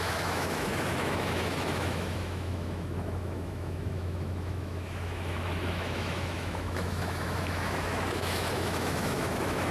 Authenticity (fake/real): fake